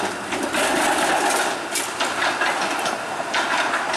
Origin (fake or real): real